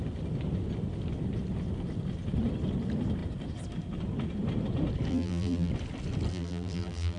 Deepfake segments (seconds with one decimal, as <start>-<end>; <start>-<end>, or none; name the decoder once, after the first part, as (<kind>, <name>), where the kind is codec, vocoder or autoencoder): 5.1-5.7 (vocoder, BigVGAN v2); 6.3-7.2